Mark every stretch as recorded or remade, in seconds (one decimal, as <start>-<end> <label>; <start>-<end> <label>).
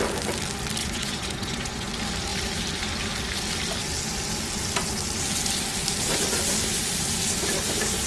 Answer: 0.0-0.8 recorded; 0.8-1.9 remade; 1.9-8.1 recorded